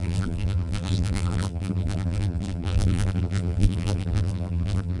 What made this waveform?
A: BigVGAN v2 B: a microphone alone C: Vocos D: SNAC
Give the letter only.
A